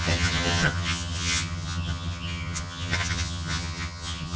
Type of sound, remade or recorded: remade